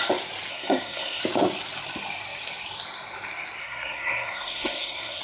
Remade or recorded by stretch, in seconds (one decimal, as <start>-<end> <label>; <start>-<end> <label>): 0.0-0.5 recorded; 0.5-1.2 remade; 1.2-3.6 recorded; 3.6-5.2 remade